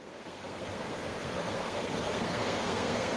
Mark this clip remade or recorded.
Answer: remade